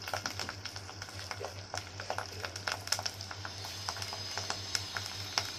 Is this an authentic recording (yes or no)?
yes